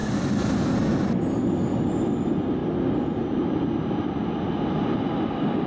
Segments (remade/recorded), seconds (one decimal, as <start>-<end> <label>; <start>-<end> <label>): 0.0-5.7 recorded